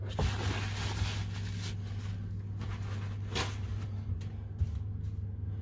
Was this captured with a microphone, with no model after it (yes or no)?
yes